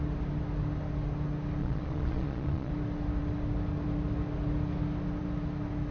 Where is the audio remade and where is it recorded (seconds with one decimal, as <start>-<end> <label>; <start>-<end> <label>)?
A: 0.0-1.6 recorded; 1.6-2.7 remade; 2.7-5.9 recorded